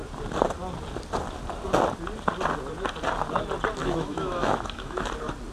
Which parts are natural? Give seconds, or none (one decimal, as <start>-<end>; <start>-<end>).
0.0-3.8; 5.1-5.5